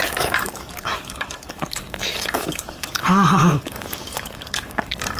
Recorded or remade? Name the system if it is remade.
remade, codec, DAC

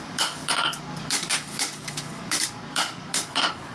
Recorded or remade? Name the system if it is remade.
remade, codec, DAC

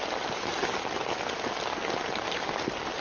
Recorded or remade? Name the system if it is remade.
recorded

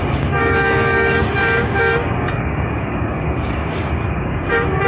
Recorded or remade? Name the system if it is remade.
remade, codec, DAC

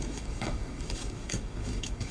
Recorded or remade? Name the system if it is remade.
remade, codec, DAC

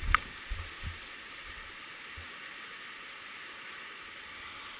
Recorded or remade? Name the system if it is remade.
recorded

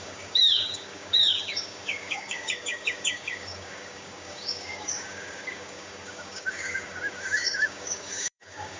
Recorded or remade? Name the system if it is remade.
remade, codec, DAC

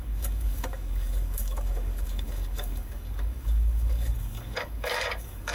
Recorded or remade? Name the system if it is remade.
remade, codec, DAC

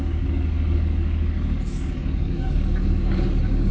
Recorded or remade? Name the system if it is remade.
remade, codec, DAC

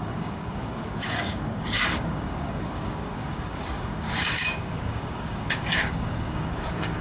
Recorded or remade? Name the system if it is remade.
remade, codec, DAC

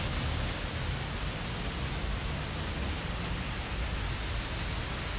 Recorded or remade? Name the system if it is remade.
recorded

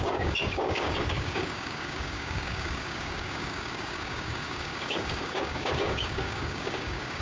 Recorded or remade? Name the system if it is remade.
remade, codec, DAC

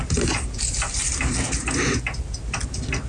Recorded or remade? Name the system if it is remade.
recorded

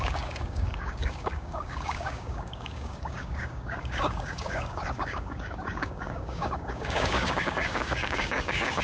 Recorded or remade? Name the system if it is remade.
remade, codec, DAC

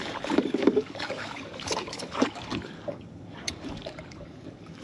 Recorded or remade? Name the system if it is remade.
remade, codec, DAC